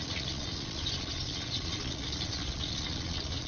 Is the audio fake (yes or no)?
yes